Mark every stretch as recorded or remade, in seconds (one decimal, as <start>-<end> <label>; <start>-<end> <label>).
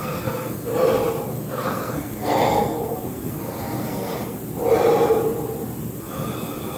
0.0-0.7 remade; 0.7-1.3 recorded; 1.3-4.4 remade; 4.4-6.0 recorded; 6.0-6.8 remade